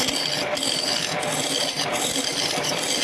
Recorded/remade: recorded